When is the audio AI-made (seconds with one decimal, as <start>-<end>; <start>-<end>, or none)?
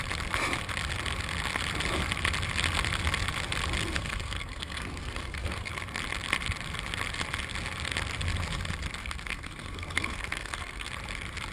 3.8-5.7; 9.0-10.9